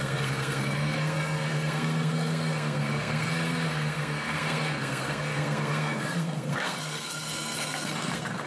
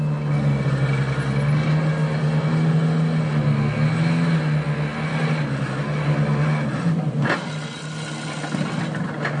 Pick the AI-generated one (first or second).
first